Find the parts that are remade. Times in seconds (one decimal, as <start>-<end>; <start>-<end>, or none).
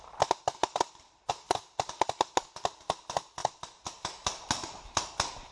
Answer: 0.6-1.3; 3.4-3.9